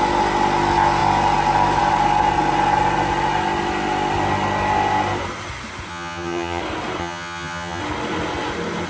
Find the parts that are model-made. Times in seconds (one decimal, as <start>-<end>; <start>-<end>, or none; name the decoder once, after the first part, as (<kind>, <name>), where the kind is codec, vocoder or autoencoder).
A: 5.9-6.6 (vocoder, HiFi-GAN); 7.0-7.8